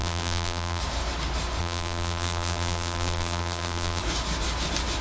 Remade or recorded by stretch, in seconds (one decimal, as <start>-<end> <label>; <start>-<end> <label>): 0.0-0.8 remade; 0.8-1.6 recorded; 1.6-4.0 remade; 4.0-5.0 recorded